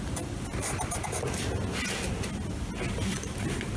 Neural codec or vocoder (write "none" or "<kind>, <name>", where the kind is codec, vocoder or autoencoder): none